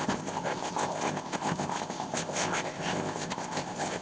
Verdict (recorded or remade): remade